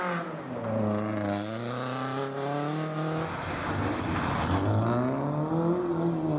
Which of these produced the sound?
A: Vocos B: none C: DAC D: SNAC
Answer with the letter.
B